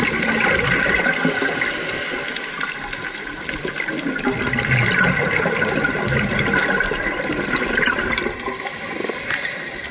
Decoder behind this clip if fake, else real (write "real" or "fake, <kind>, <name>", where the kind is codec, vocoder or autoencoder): real